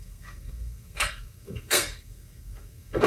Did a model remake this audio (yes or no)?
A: yes